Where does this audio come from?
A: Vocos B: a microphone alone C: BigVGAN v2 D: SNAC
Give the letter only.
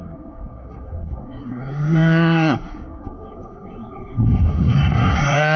D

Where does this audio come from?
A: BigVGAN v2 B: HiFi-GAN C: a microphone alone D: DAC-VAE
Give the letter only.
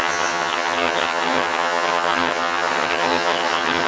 B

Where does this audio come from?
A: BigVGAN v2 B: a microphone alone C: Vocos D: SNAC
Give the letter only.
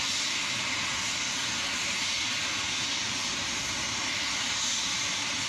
A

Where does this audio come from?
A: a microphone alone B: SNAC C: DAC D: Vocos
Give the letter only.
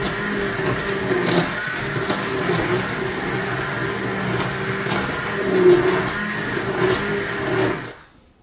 A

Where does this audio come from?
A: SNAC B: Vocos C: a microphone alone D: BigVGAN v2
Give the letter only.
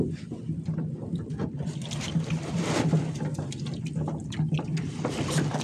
D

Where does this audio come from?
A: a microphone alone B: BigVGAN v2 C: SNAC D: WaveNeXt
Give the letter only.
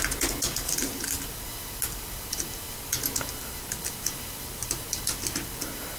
B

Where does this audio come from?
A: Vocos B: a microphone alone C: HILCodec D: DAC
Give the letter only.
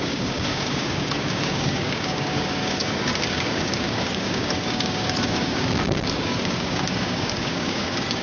D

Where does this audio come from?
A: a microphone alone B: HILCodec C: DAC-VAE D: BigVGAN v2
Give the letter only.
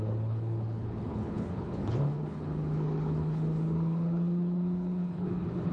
B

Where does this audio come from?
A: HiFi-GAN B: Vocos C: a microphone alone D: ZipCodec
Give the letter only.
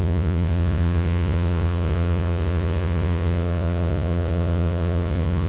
B